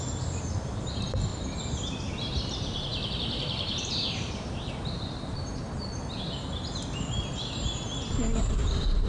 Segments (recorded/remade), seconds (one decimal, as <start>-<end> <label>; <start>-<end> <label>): 0.0-1.3 remade; 1.3-1.9 recorded; 1.9-5.6 remade; 5.6-8.4 recorded; 8.4-9.1 remade